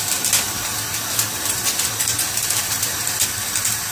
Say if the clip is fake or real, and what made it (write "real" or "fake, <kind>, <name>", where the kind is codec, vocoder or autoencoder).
real